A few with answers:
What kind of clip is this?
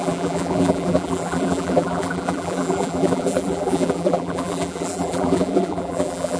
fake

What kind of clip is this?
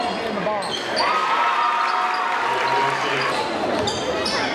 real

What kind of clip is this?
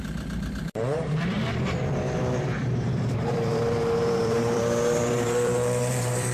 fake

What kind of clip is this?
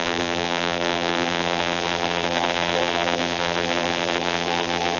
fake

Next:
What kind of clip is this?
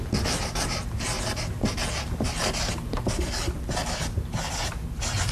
real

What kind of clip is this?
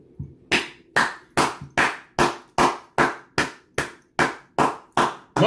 real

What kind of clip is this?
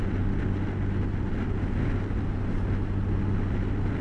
real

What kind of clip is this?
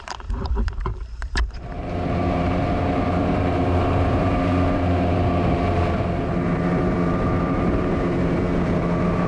fake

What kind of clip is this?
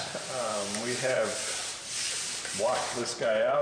fake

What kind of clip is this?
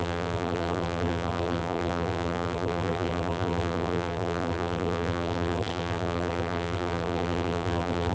fake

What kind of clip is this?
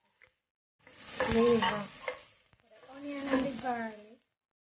real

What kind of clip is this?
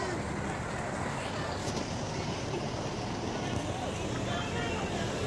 fake